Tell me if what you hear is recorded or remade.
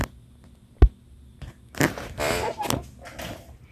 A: recorded